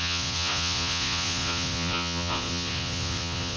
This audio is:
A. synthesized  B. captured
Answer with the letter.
A